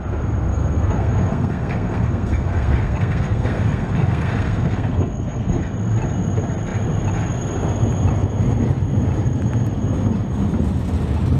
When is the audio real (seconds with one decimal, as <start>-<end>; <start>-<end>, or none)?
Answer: 0.0-0.5; 5.6-11.4